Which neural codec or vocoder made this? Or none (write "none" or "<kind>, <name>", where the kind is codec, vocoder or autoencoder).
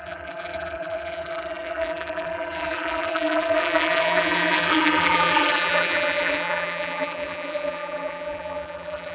vocoder, BigVGAN v2